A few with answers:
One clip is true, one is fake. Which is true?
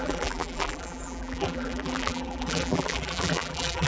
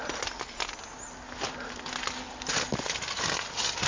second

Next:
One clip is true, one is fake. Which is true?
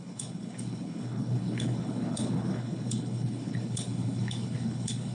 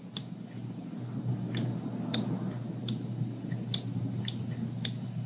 second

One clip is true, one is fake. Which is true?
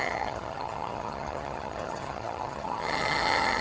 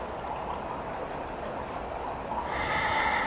second